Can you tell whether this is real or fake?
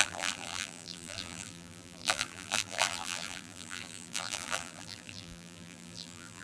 fake